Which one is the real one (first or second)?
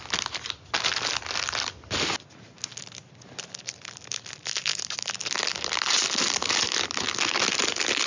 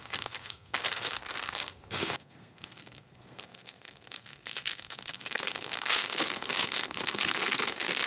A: first